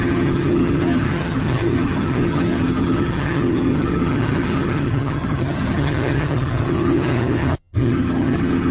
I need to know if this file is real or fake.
fake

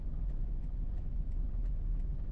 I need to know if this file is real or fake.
fake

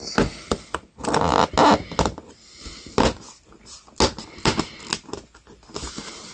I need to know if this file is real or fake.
real